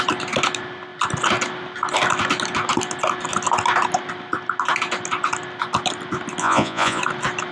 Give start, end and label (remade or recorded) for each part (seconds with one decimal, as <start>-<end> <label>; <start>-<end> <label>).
0.0-6.4 recorded; 6.4-7.0 remade; 7.0-7.5 recorded